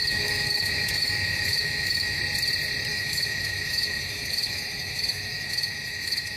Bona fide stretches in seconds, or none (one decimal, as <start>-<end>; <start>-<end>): 2.2-2.9